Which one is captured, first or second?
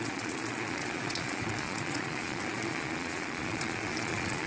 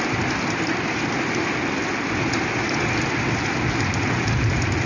second